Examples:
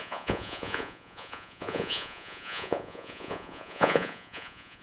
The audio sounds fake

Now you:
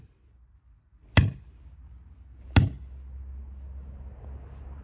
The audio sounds real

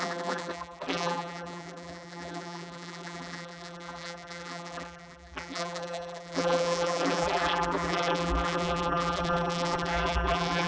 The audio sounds fake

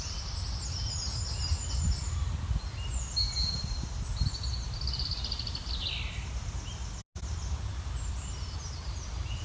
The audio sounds real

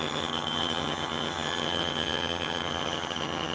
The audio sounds fake